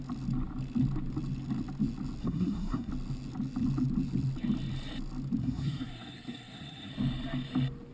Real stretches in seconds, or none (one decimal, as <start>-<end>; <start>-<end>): 0.0-2.2; 2.9-5.4; 6.9-7.9